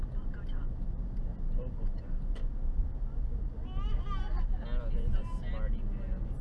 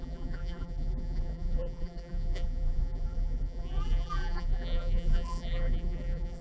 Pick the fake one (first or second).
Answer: second